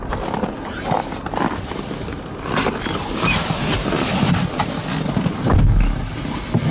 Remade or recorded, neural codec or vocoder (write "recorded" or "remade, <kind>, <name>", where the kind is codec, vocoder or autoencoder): recorded